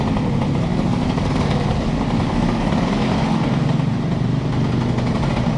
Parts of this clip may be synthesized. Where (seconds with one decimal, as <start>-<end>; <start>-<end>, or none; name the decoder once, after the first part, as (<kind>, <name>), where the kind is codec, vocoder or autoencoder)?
0.7-3.5 (codec, DAC)

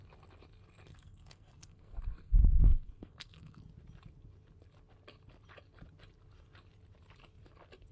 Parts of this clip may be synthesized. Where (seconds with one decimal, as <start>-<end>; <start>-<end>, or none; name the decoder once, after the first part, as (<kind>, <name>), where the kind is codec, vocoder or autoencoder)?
0.9-3.6 (codec, SNAC)

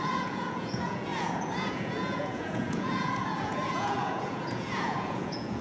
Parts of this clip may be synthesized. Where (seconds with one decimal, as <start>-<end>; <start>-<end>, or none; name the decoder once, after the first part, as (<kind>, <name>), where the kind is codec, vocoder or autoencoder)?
0.0-5.6 (vocoder, Vocos)